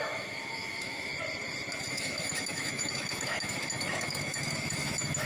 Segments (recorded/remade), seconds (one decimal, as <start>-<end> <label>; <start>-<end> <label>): 0.0-1.1 remade; 1.1-1.9 recorded; 1.9-5.3 remade